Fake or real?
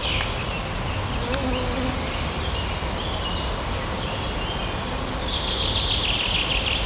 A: real